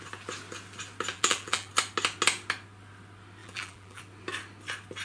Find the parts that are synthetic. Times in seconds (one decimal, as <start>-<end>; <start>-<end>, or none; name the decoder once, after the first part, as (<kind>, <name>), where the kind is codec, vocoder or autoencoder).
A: 1.1-1.7 (vocoder, BigVGAN v2); 3.4-4.0